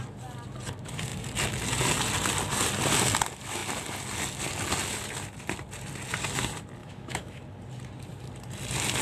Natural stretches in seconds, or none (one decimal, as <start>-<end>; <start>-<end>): 0.0-6.8; 7.4-9.0